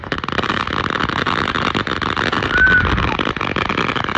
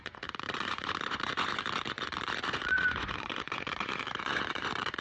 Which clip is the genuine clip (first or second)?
first